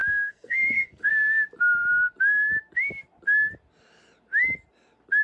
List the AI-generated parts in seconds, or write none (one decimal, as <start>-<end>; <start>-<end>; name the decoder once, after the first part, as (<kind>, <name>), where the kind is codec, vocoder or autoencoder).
0.0-1.1 (codec, SNAC)

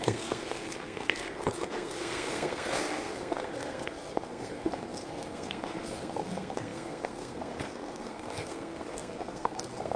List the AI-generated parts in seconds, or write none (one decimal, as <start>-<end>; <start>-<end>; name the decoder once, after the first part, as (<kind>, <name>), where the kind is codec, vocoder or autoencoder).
0.0-10.0 (codec, SNAC)

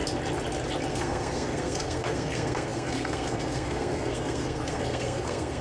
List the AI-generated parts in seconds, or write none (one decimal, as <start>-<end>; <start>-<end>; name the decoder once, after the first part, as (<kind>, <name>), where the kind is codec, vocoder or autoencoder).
0.9-5.6 (codec, SNAC)

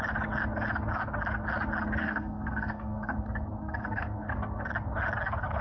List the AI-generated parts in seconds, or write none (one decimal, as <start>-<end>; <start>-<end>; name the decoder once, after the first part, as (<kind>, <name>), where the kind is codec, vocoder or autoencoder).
2.0-4.7 (codec, SNAC)

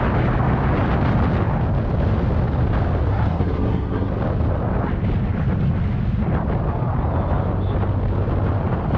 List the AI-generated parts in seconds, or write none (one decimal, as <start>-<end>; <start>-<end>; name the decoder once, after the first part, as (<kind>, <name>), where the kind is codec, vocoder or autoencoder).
3.1-4.1 (codec, SNAC)

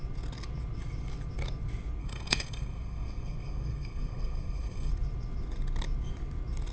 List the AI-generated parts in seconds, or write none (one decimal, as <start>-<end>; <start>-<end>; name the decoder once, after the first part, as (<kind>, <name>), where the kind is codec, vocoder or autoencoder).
2.0-4.9 (codec, SNAC)

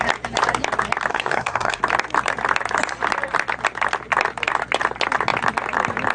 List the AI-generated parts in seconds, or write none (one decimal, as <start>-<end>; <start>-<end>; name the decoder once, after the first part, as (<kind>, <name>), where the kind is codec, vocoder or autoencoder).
1.1-1.8 (codec, SNAC)

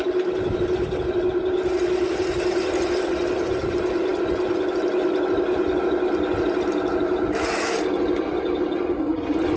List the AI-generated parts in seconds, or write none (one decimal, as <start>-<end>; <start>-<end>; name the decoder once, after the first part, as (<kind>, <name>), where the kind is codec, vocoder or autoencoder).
none